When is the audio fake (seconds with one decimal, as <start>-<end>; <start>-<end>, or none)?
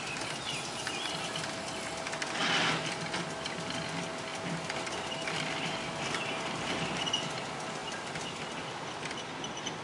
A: 4.3-4.8